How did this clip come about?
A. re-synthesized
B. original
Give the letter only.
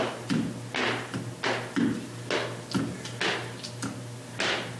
B